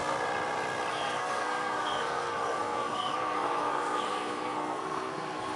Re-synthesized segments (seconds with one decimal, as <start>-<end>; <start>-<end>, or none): 0.9-5.6